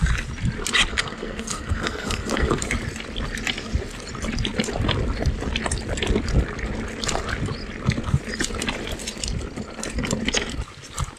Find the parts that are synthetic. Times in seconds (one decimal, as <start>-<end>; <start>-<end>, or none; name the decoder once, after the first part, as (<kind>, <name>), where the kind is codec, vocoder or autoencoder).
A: 0.9-2.6 (codec, SNAC)